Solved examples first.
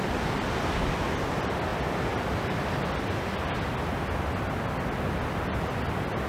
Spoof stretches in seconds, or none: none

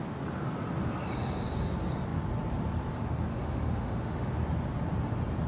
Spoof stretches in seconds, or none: 3.3-4.3 (autoencoder, DAC-VAE)

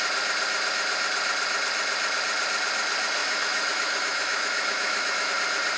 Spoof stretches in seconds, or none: 3.2-5.3 (autoencoder, DAC-VAE)

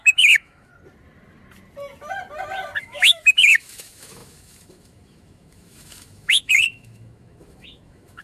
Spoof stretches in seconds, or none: 0.0-0.7 (autoencoder, DAC-VAE); 2.8-8.2

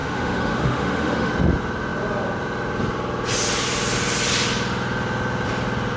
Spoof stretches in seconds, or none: 0.0-1.3 (autoencoder, DAC-VAE)

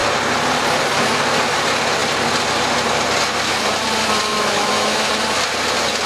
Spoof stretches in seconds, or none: 4.3-5.1 (autoencoder, DAC-VAE)